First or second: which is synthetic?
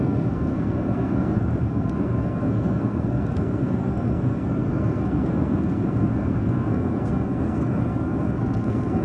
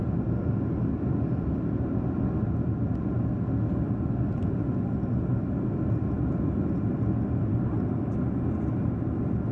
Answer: first